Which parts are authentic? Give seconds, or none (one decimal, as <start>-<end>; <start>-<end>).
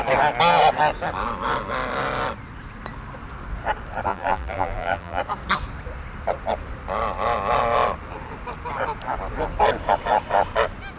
0.0-4.1; 5.2-11.0